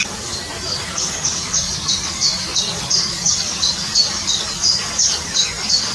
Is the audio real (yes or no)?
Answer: no